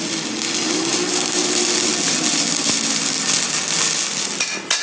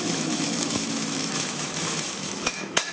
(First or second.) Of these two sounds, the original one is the first